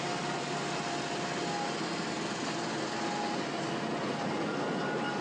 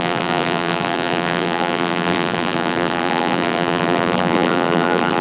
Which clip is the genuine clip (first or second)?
first